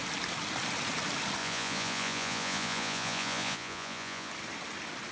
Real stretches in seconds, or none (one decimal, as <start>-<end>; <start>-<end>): 0.0-1.4; 4.3-5.1

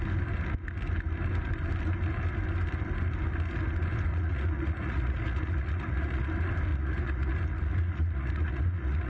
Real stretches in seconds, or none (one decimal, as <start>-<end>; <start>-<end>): 0.0-4.1; 6.3-6.7